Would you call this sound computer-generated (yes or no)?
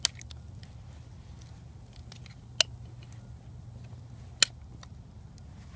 no